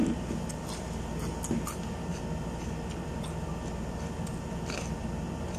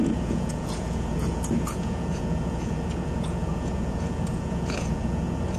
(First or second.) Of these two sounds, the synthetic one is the second